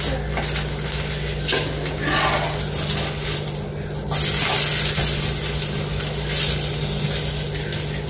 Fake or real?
real